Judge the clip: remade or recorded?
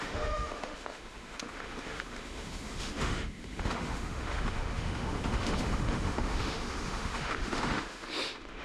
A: remade